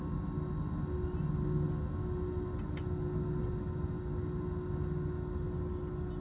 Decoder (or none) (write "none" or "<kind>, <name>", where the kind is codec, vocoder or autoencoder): none